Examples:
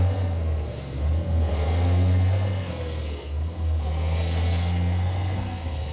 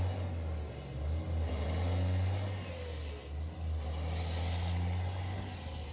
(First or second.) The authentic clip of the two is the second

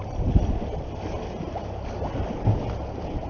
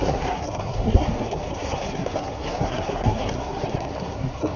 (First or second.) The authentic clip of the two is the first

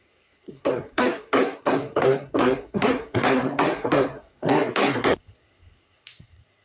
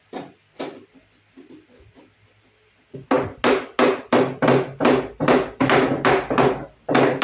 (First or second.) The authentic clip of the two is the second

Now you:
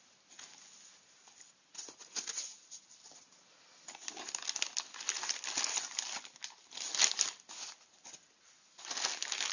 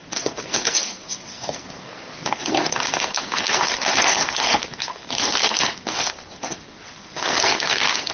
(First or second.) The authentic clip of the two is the first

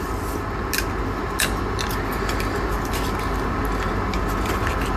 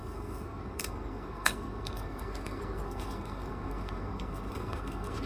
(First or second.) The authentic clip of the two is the first